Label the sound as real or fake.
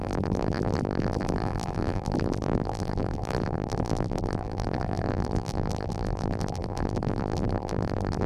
fake